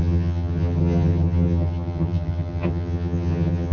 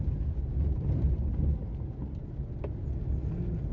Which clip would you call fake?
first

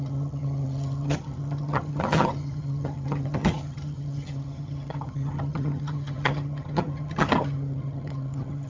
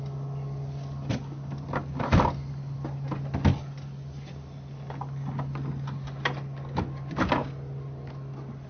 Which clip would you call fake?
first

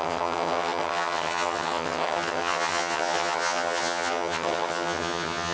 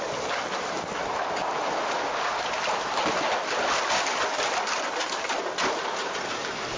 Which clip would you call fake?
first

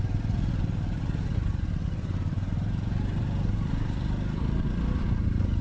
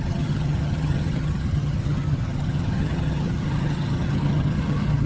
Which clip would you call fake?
second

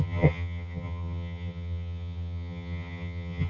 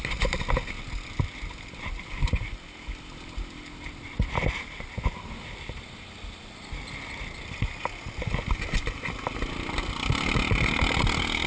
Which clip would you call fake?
first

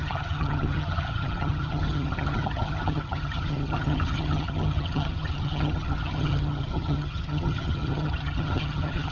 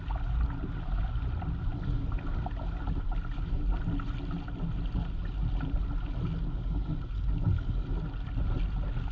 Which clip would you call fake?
first